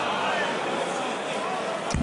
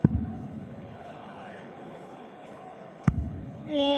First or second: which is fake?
second